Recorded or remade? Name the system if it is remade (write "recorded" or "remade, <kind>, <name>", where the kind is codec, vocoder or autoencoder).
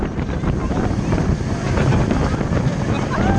recorded